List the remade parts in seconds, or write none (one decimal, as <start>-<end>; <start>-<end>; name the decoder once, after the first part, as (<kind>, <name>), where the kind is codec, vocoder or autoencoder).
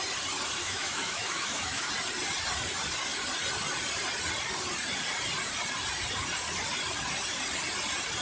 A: 0.6-1.9 (autoencoder, DAC-VAE)